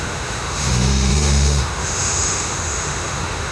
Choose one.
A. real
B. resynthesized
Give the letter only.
B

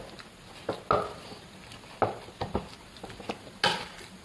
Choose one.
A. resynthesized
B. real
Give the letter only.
B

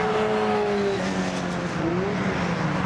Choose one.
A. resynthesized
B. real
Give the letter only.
B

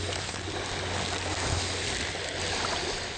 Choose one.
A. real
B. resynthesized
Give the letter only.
A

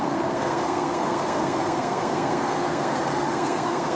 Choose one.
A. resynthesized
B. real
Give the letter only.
A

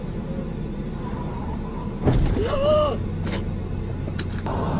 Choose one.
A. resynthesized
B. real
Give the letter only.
B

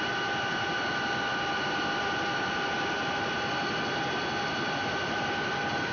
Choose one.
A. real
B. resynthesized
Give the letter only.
A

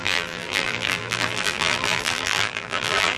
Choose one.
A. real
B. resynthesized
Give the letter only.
B